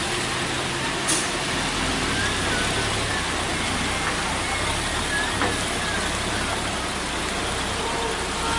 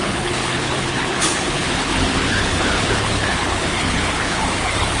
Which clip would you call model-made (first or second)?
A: second